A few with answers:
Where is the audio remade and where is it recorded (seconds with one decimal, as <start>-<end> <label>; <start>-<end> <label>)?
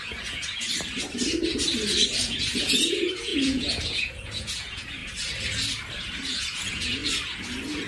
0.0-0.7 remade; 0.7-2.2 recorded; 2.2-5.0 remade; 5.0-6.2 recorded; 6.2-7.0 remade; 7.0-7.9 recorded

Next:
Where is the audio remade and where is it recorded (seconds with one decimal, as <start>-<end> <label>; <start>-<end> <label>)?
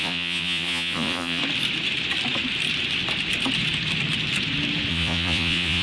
0.0-1.4 remade; 1.4-4.9 recorded; 4.9-5.8 remade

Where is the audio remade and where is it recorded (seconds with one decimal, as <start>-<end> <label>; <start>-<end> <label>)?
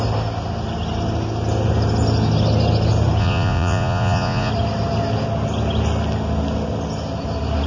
0.0-3.2 recorded; 3.2-4.5 remade; 4.5-7.7 recorded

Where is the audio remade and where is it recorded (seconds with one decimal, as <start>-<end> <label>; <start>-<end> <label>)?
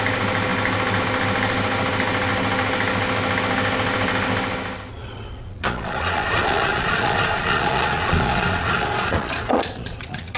0.0-4.9 recorded; 4.9-10.4 remade